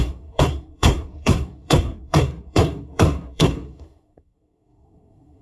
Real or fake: fake